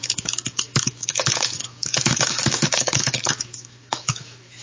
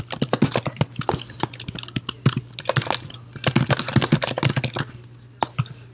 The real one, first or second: second